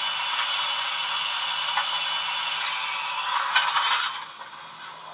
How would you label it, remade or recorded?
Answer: recorded